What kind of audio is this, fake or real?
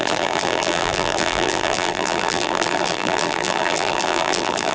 fake